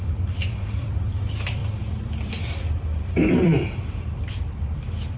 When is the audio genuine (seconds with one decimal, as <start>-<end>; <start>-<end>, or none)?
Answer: none